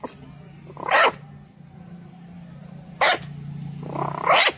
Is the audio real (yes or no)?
yes